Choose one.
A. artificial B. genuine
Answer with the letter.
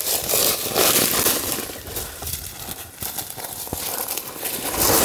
B